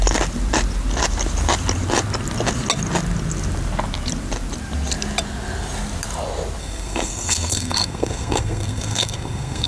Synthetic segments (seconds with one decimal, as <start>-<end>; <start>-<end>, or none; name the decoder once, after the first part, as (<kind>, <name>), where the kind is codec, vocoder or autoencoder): 6.6-9.7 (codec, SNAC)